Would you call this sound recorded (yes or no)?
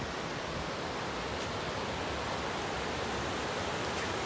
yes